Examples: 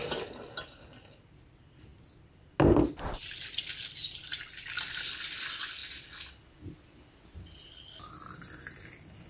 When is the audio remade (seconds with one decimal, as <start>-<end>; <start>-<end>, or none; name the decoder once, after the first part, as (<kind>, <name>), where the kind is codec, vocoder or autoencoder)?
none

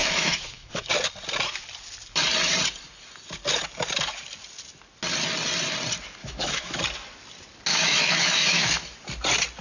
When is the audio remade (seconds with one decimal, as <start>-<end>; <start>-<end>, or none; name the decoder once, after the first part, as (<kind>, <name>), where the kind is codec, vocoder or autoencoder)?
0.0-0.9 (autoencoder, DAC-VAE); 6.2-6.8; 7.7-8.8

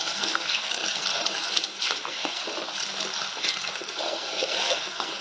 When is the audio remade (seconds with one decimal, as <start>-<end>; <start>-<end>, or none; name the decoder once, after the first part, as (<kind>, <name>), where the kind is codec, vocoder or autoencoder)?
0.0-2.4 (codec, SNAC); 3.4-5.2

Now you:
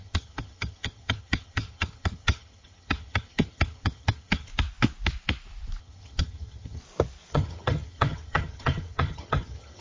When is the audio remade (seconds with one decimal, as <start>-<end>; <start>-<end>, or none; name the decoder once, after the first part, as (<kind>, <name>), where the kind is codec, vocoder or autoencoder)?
0.0-4.5 (vocoder, HiFi-GAN); 5.8-6.8; 7.3-9.8

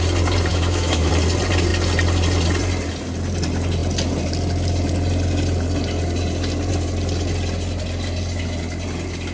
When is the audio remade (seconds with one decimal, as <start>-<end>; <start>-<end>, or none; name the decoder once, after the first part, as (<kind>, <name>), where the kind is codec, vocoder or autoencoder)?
0.5-1.1 (autoencoder, DAC-VAE)